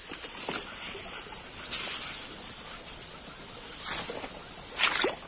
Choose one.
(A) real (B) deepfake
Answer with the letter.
A